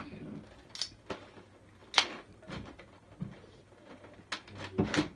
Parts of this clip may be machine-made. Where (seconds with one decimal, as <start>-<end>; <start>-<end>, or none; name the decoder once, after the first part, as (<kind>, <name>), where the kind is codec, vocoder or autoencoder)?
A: none